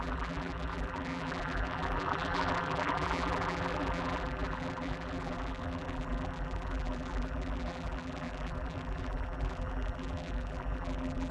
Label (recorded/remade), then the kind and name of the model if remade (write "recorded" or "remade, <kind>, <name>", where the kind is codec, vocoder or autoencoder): remade, vocoder, BigVGAN v2